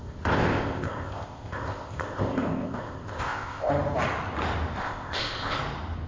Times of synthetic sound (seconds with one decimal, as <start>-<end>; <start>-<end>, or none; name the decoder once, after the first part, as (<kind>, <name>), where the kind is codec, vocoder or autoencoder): 0.0-3.7 (codec, ZipCodec); 4.8-5.6